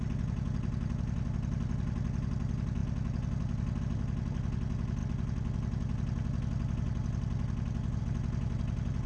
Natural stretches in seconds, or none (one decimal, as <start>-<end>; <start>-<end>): 0.0-9.1